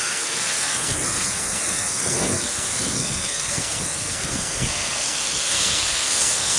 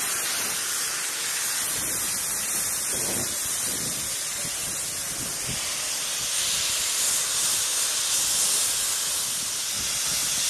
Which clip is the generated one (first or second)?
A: first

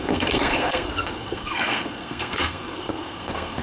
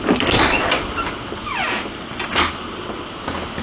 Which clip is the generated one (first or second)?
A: first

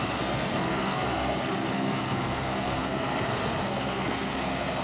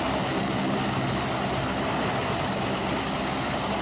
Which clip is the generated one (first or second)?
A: first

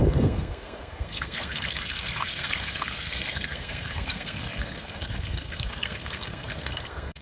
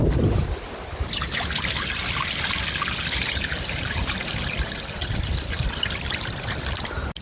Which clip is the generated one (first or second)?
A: first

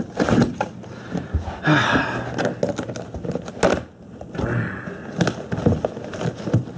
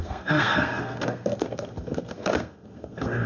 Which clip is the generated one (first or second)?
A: second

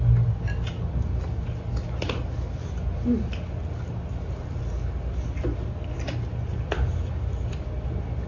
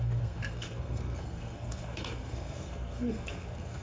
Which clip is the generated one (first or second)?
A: second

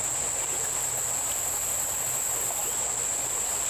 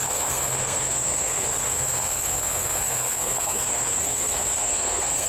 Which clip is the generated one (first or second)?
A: second